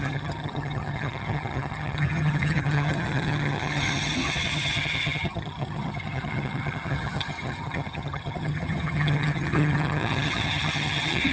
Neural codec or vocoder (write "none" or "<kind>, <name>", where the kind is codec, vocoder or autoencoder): vocoder, HiFi-GAN